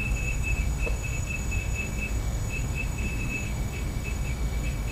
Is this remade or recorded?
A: remade